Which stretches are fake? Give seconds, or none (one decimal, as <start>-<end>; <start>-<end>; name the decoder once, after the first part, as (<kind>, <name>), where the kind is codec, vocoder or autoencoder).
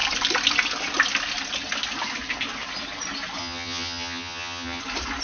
3.4-4.8 (vocoder, HiFi-GAN)